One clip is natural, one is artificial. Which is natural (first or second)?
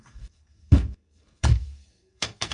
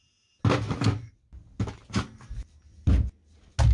second